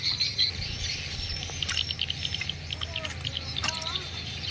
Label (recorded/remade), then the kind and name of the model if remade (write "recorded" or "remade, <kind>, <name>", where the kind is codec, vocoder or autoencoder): recorded